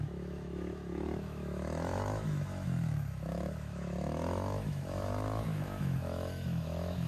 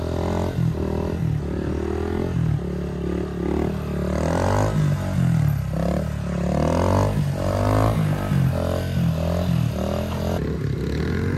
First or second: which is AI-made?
first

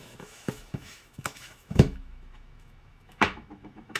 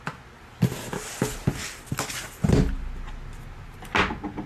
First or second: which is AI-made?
first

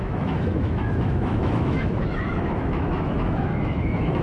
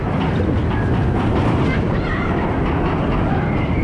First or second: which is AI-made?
first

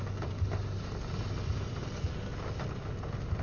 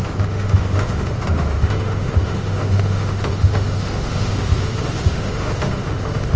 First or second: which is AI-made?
second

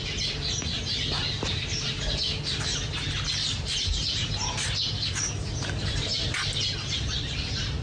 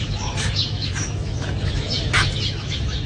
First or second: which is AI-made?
second